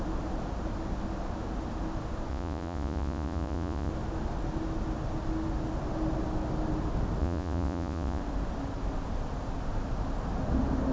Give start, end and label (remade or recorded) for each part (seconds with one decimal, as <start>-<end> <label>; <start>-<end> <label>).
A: 0.0-2.3 recorded; 2.3-3.9 remade; 3.9-7.2 recorded; 7.2-8.2 remade; 8.2-10.9 recorded